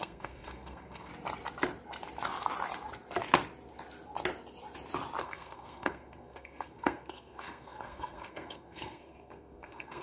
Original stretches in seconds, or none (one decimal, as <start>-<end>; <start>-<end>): 1.1-5.2